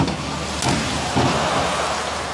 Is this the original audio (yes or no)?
yes